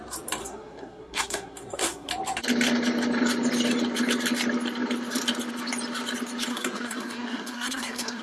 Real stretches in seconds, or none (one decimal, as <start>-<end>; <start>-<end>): 0.0-0.4; 2.1-6.5